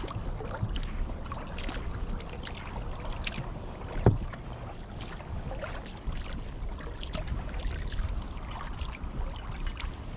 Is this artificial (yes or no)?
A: no